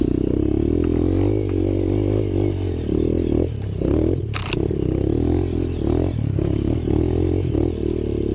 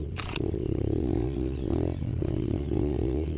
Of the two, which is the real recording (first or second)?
first